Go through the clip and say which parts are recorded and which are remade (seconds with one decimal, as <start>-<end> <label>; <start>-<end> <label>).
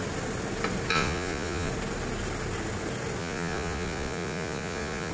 0.0-0.9 recorded; 0.9-1.7 remade; 1.7-3.2 recorded; 3.2-5.1 remade